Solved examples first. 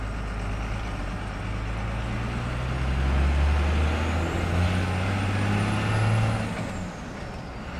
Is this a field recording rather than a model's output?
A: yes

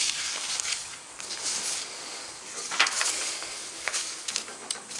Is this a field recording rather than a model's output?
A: no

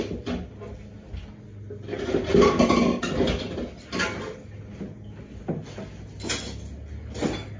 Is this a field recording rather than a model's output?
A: yes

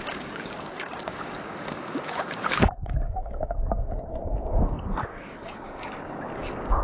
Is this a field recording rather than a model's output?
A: no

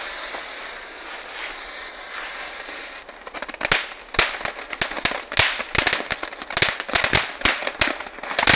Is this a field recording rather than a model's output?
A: yes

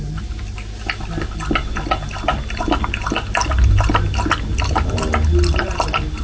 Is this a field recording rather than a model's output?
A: yes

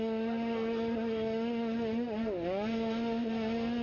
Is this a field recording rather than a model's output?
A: yes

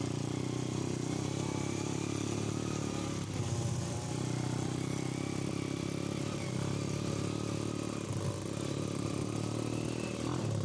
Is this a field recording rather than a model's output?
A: yes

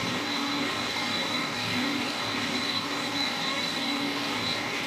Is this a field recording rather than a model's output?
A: no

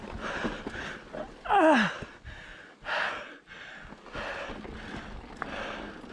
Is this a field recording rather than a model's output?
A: yes